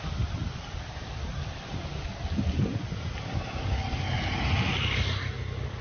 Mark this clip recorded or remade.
recorded